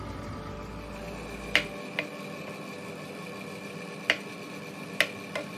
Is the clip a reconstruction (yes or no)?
no